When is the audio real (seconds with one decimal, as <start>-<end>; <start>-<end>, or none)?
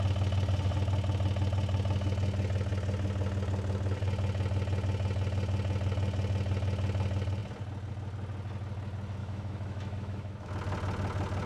0.0-9.2; 10.5-11.5